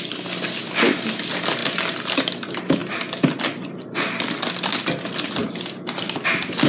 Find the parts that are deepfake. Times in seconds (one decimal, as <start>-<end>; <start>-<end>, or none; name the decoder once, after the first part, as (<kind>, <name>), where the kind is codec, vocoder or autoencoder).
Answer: none